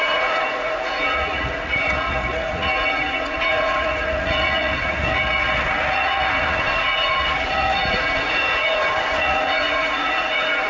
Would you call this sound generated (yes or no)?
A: yes